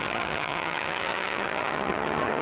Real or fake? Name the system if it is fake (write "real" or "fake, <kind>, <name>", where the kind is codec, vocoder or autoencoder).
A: fake, vocoder, HiFi-GAN